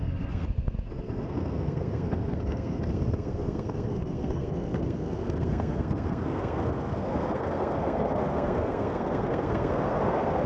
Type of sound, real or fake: fake